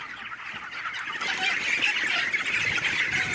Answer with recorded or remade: recorded